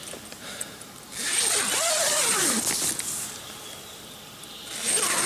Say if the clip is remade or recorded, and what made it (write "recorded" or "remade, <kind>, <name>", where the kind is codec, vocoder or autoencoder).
recorded